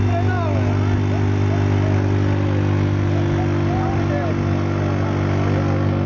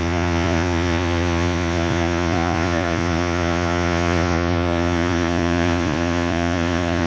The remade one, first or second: second